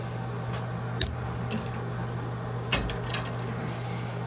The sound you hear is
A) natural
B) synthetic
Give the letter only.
A